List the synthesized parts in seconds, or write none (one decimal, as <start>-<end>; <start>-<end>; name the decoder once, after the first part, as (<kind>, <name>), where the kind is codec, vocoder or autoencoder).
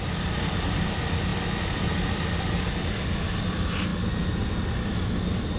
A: none